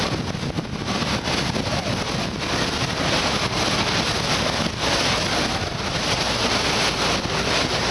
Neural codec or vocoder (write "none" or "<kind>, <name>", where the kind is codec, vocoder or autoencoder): none